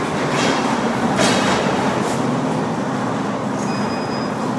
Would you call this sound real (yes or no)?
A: yes